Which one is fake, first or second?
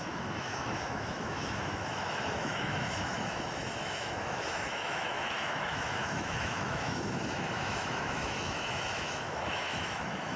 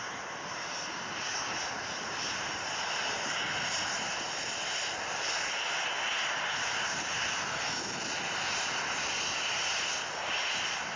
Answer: first